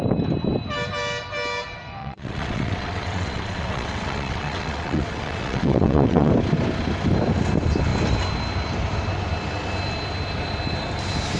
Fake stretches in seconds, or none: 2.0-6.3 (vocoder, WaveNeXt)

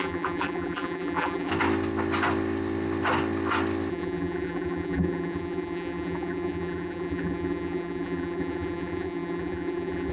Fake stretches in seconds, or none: 0.0-1.5 (vocoder, BigVGAN v2); 3.9-10.1

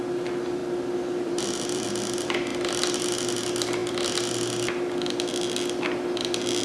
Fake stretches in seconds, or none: 0.6-1.9 (vocoder, BigVGAN v2); 2.5-3.0

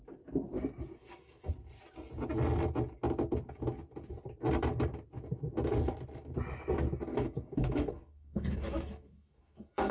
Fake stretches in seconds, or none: 1.0-1.5 (autoencoder, DAC-VAE); 7.1-9.9

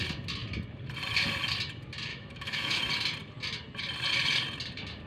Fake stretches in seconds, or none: 2.1-2.8 (autoencoder, DAC-VAE)